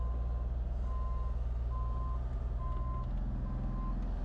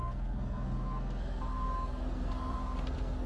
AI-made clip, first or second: second